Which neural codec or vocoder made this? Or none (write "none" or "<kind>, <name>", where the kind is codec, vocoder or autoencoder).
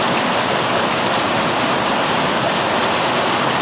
none